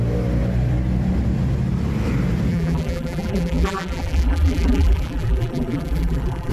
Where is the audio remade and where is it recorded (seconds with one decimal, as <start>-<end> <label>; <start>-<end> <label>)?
0.0-2.5 recorded; 2.5-6.5 remade

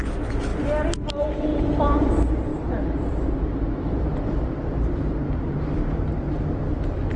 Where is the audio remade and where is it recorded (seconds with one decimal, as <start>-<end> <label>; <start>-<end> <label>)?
0.0-1.5 recorded; 1.5-2.1 remade; 2.1-2.5 recorded; 2.5-6.4 remade; 6.4-7.2 recorded

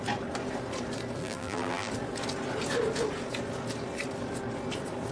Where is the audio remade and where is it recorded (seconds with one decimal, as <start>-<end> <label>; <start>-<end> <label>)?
0.0-1.2 recorded; 1.2-1.9 remade; 1.9-5.1 recorded